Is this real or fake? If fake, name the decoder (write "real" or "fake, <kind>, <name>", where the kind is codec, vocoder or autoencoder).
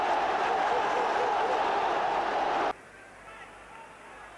real